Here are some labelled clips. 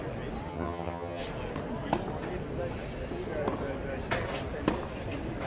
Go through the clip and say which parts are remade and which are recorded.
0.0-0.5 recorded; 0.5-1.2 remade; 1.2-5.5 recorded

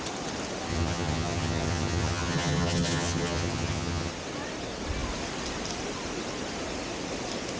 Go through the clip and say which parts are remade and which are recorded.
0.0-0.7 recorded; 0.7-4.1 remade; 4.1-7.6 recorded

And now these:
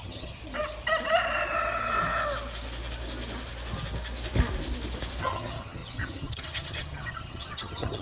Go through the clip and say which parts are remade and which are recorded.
0.0-0.4 remade; 0.4-5.2 recorded; 5.2-8.0 remade

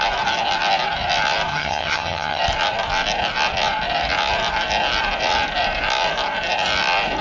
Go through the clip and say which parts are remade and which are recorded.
0.0-1.5 recorded; 1.5-2.4 remade; 2.4-7.2 recorded

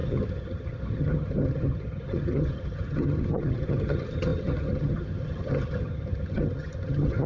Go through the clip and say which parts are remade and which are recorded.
0.0-7.3 remade

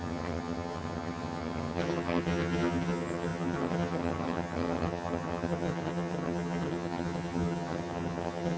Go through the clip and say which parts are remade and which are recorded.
0.0-8.6 remade

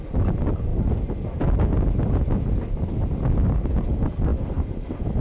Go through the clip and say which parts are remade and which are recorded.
0.0-5.2 recorded